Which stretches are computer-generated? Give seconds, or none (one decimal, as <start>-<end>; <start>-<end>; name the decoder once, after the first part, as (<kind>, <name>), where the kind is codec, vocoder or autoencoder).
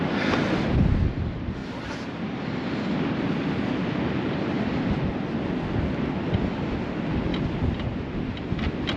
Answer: none